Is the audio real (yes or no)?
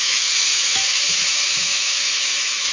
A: no